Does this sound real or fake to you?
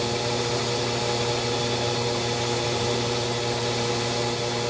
real